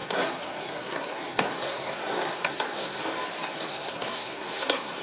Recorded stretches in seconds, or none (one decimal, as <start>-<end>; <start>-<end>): 3.0-3.7